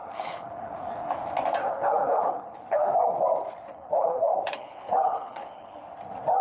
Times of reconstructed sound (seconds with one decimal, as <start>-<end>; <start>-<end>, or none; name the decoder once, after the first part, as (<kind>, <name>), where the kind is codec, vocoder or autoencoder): 0.0-1.1 (codec, HILCodec); 1.6-2.9; 3.7-5.8